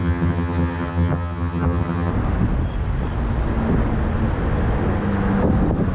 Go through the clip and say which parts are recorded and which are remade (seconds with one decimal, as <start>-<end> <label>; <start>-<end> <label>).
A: 0.0-2.1 remade; 2.1-5.9 recorded

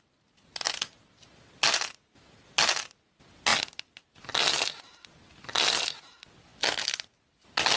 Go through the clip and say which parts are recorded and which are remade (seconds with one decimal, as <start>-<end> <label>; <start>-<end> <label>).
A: 0.0-7.8 recorded

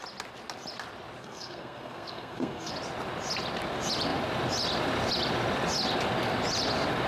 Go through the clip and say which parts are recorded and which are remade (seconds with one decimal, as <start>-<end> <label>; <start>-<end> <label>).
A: 0.0-1.2 recorded; 1.2-2.7 remade; 2.7-7.1 recorded